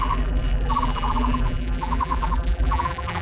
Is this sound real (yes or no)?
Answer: no